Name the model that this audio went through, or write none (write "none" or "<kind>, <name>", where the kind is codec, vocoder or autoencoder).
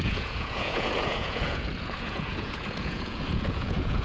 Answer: vocoder, Vocos